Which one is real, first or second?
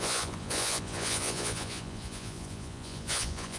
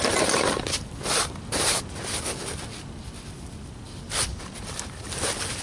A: second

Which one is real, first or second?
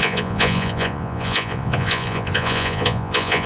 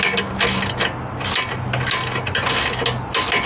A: second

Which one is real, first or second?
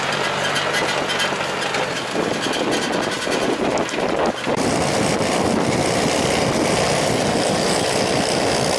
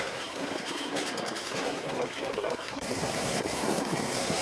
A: first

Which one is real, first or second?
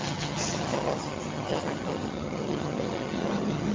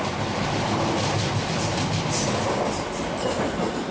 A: second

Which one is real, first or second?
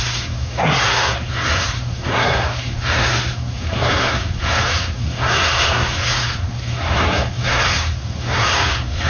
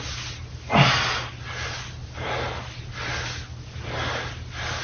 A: second